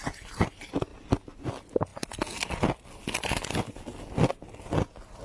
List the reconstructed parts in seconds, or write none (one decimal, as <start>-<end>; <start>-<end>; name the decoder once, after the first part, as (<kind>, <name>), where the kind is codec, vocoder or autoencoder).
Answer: none